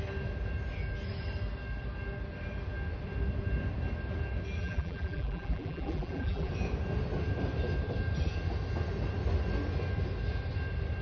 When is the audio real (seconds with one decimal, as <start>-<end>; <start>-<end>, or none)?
0.0-4.6; 6.5-11.0